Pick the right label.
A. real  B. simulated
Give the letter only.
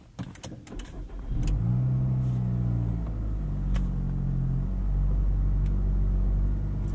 A